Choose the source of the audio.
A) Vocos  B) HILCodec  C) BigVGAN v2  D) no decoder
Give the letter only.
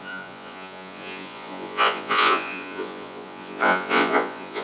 A